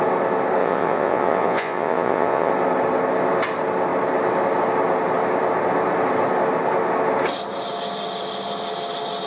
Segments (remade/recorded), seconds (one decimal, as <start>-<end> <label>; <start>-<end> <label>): 0.0-0.6 recorded; 0.6-2.5 remade; 2.5-9.3 recorded